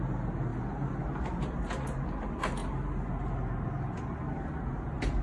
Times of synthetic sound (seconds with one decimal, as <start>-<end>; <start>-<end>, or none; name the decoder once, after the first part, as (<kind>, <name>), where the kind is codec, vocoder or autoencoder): none